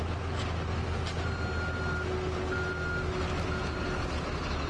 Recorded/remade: recorded